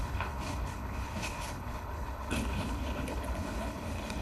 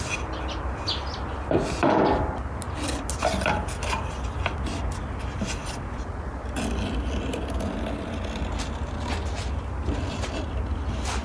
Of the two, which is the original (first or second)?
second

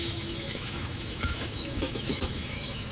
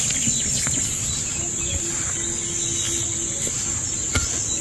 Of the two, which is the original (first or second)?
second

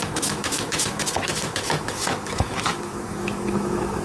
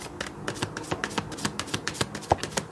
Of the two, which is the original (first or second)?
second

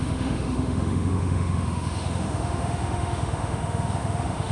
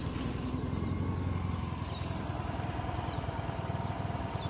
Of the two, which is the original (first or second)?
second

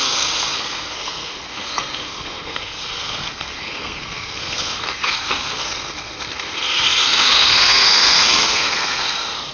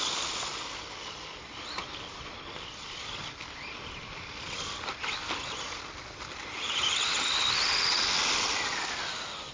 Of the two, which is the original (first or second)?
second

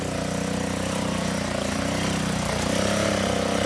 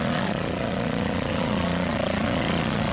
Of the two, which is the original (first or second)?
first